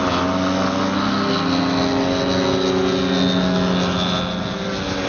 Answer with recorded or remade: recorded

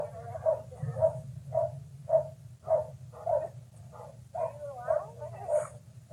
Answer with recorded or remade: recorded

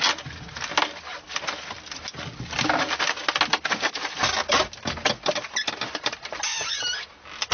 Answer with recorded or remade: recorded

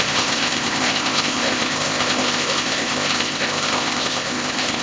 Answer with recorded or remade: remade